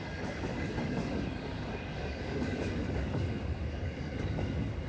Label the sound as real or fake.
fake